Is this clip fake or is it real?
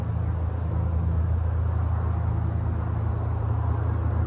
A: real